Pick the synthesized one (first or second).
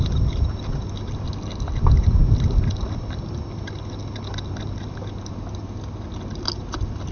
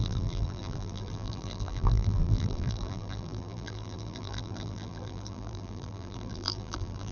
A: second